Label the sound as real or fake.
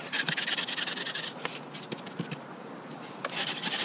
real